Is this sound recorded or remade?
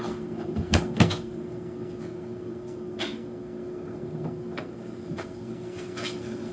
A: remade